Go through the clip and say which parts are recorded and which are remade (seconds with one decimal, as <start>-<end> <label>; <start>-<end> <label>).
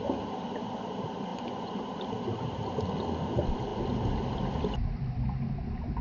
0.0-1.3 recorded; 1.3-1.8 remade; 1.8-6.0 recorded